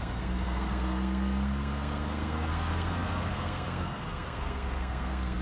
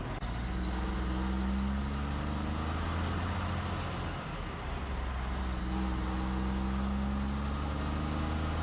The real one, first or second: second